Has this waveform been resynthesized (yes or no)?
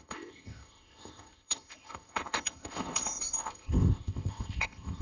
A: yes